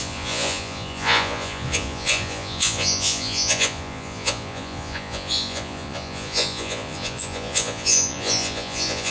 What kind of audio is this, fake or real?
fake